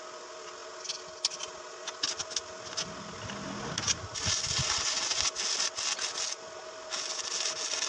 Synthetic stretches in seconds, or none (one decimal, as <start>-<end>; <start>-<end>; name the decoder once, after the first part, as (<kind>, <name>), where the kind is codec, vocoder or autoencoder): none